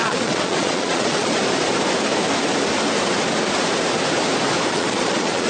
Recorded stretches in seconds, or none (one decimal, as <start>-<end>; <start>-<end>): 1.4-4.7